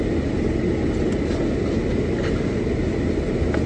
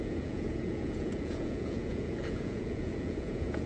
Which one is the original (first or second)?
first